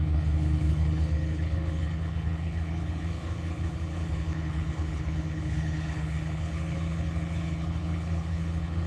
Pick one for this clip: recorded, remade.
remade